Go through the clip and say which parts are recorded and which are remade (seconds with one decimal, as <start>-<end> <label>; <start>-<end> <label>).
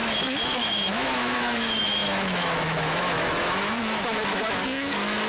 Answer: 0.0-5.3 remade